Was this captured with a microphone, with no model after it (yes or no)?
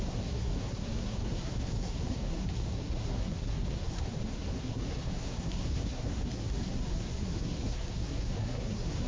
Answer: no